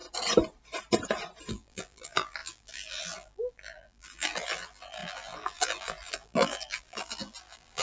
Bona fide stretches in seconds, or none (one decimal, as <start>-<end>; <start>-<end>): 0.0-1.5